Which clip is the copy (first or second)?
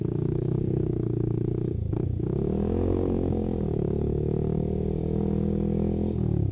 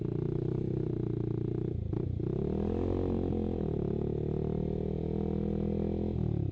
first